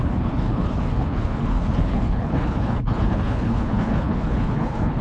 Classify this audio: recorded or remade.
remade